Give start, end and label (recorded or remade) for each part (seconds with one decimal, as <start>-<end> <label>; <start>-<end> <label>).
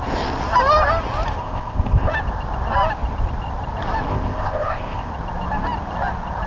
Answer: 0.0-1.4 recorded; 1.4-2.1 remade; 2.1-4.1 recorded; 4.1-5.1 remade; 5.1-6.5 recorded